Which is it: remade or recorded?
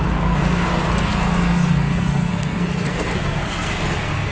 remade